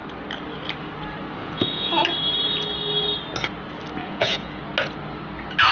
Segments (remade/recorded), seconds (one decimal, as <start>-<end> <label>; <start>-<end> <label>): 0.0-1.4 recorded; 1.4-1.9 remade; 1.9-4.0 recorded; 4.0-4.6 remade; 4.6-5.7 recorded